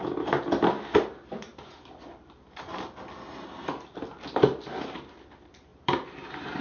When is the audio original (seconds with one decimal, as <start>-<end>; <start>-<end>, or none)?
0.0-5.7